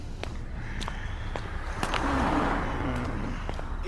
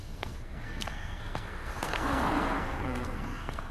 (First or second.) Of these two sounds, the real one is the first